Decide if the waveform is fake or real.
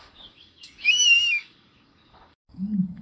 fake